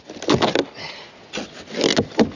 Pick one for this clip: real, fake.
real